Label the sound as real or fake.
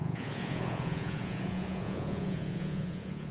fake